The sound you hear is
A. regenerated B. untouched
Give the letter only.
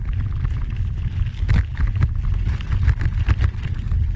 B